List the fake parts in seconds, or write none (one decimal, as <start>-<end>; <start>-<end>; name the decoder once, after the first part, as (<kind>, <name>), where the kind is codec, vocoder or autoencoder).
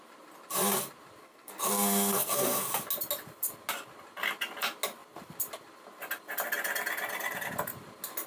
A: 1.2-2.7 (codec, SNAC)